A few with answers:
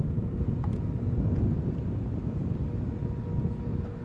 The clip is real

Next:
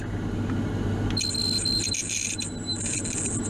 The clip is real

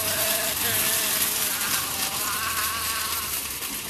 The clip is real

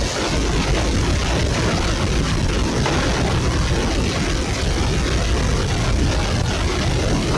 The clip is real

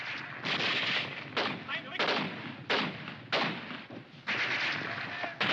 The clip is real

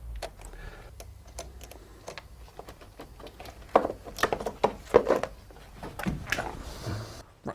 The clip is real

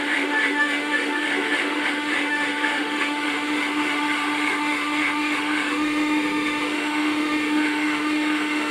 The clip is fake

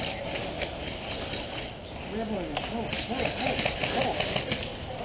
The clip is real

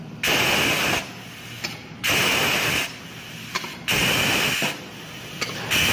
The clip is real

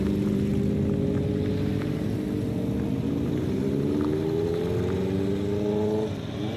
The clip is real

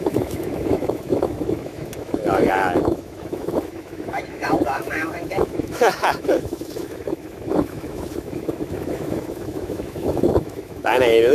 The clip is fake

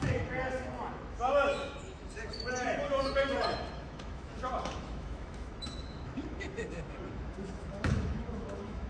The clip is fake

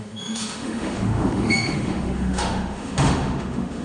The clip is fake